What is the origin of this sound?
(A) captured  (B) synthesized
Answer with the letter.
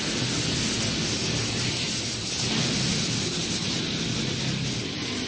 A